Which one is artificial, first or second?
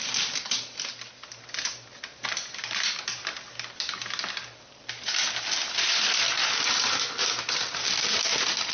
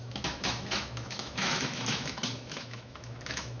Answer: second